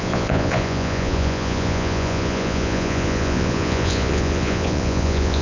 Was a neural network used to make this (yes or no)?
yes